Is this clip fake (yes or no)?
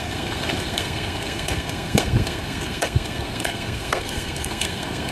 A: yes